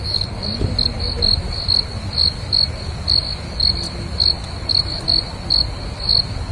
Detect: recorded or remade recorded